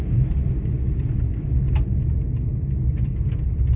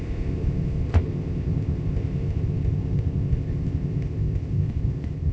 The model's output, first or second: second